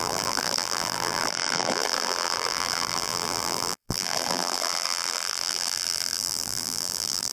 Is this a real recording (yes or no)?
no